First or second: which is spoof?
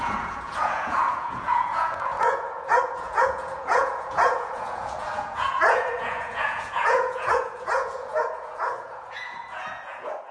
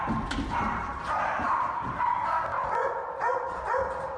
first